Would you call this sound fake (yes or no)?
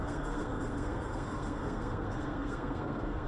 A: yes